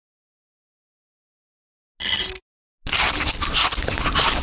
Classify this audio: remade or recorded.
recorded